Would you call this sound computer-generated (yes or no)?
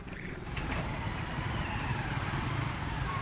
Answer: yes